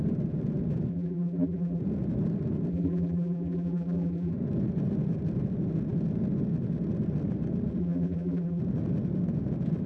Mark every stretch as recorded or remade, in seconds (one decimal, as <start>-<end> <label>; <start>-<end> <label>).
0.0-0.9 recorded; 0.9-1.8 remade; 1.8-2.7 recorded; 2.7-4.3 remade; 4.3-7.8 recorded; 7.8-8.6 remade; 8.6-9.9 recorded